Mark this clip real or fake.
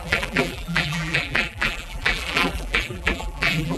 fake